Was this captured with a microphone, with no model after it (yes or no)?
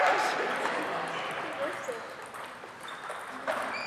yes